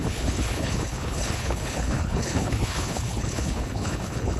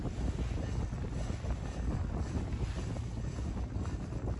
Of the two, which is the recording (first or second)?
second